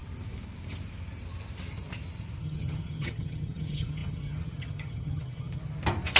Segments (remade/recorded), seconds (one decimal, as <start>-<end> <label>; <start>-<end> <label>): 0.0-2.4 recorded; 2.4-5.6 remade; 5.6-6.2 recorded